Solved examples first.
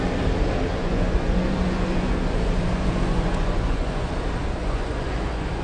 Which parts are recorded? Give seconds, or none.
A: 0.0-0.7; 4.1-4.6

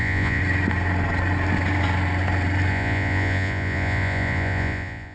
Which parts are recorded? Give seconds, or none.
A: 0.4-2.7

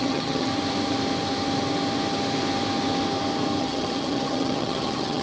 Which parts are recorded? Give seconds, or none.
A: 0.5-3.6